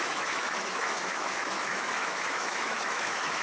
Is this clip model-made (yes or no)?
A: yes